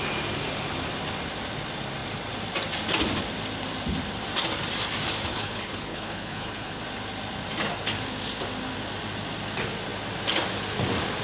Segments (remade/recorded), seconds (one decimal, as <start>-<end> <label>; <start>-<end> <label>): 0.0-5.3 recorded; 5.3-6.8 remade; 6.8-11.2 recorded